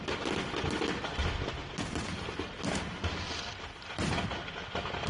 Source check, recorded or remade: recorded